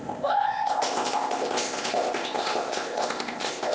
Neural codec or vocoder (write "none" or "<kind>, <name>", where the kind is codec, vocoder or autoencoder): codec, ZipCodec